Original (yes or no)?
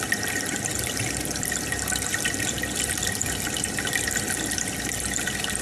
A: no